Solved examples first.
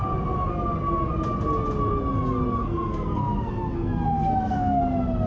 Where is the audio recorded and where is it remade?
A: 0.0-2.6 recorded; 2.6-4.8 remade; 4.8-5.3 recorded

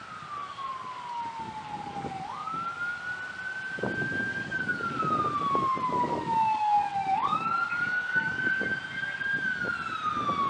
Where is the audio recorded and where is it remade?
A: 0.0-0.4 recorded; 0.4-3.0 remade; 3.0-4.3 recorded; 4.3-5.0 remade; 5.0-5.9 recorded; 5.9-8.5 remade; 8.5-10.5 recorded

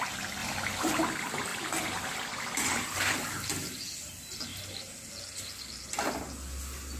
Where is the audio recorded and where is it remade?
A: 0.0-0.4 recorded; 0.4-1.0 remade; 1.0-1.5 recorded; 1.5-3.1 remade; 3.1-7.0 recorded

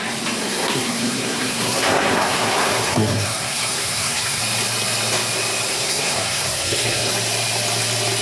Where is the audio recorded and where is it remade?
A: 0.0-0.4 recorded; 0.4-4.4 remade; 4.4-5.7 recorded; 5.7-7.1 remade; 7.1-8.2 recorded

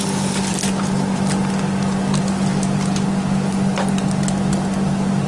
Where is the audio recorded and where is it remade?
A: 0.0-0.9 remade; 0.9-2.5 recorded; 2.5-3.1 remade; 3.1-5.3 recorded

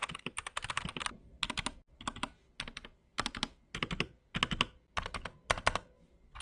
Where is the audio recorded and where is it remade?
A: 0.0-6.4 recorded

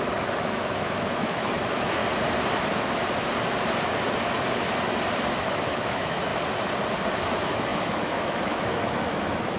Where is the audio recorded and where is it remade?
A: 0.0-2.0 remade; 2.0-5.4 recorded; 5.4-6.3 remade; 6.3-7.1 recorded; 7.1-9.6 remade

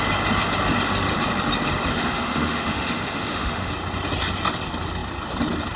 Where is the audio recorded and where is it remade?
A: 0.0-1.9 recorded; 1.9-3.7 remade; 3.7-5.8 recorded